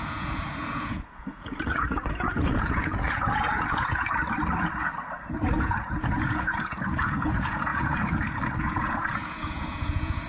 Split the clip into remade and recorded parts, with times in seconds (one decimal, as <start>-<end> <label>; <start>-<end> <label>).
0.0-4.2 remade; 4.2-5.6 recorded; 5.6-10.3 remade